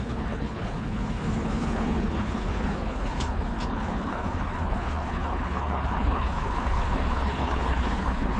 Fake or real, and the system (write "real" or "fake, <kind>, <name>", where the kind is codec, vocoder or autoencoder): fake, codec, HILCodec